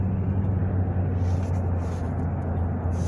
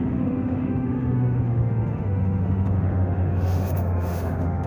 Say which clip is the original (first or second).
first